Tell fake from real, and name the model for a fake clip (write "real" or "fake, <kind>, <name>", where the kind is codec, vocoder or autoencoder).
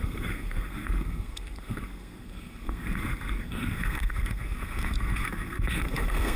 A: fake, codec, SNAC